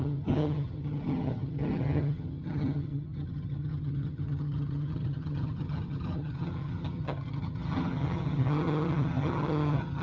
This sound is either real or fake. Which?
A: fake